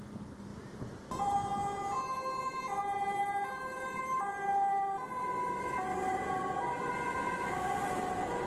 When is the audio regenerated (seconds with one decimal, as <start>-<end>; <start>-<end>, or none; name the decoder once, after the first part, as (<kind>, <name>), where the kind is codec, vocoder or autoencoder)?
none